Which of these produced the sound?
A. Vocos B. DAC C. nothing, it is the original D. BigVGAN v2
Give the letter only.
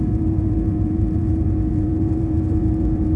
D